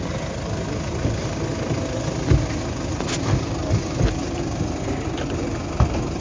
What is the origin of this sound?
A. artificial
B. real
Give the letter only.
B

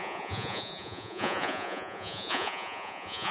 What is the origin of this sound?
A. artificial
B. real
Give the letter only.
A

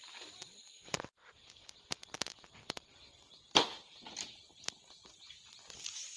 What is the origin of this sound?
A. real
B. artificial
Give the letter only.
A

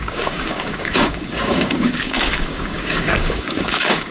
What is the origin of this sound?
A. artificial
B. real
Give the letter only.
A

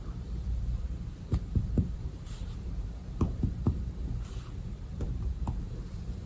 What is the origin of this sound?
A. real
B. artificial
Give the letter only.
B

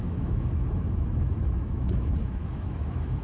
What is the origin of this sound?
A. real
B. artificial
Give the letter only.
B